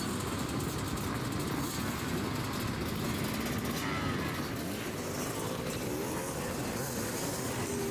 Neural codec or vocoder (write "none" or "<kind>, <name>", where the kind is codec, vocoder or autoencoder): none